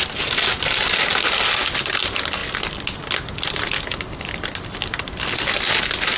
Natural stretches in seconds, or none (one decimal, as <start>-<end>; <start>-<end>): 0.0-6.2